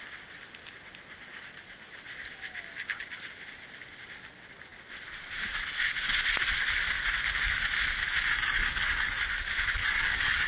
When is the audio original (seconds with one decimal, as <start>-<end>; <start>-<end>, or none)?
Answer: 0.0-8.3; 9.2-9.8

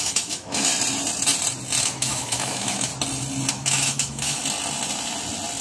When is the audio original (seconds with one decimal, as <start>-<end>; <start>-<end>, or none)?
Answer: 0.7-1.8; 2.9-3.5; 4.4-5.6

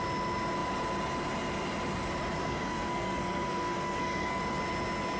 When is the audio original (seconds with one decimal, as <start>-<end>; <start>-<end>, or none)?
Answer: 0.0-2.4; 4.4-5.2

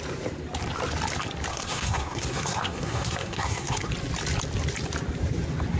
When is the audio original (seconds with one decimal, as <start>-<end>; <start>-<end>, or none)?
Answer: 0.0-1.5; 3.9-5.8

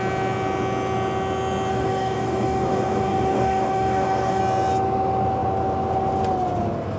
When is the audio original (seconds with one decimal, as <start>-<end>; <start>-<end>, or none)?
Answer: 0.0-1.7; 4.4-7.0